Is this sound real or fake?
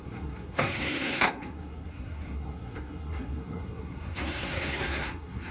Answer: fake